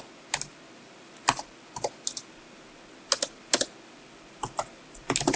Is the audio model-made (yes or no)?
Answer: no